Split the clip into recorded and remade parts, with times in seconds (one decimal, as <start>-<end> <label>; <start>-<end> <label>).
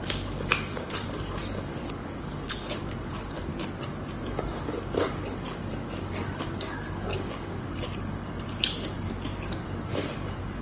0.0-3.5 remade; 3.5-4.2 recorded; 4.2-10.6 remade